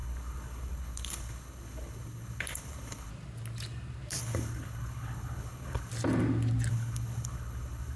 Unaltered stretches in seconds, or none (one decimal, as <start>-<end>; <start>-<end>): 3.1-4.2; 5.9-6.7